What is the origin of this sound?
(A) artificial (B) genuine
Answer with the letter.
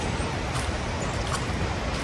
A